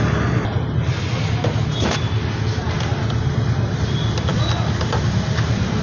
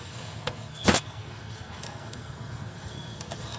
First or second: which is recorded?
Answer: first